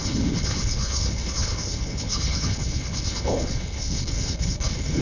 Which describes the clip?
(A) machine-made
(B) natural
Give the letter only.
A